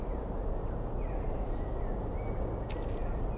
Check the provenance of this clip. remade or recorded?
recorded